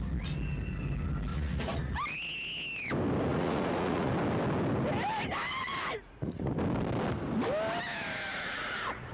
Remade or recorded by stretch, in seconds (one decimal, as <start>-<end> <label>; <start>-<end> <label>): 0.0-1.3 recorded; 1.3-1.9 remade; 1.9-3.3 recorded; 3.3-4.1 remade; 4.1-5.6 recorded; 5.6-6.5 remade; 6.5-8.3 recorded; 8.3-9.1 remade